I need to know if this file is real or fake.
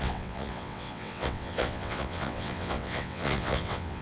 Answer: fake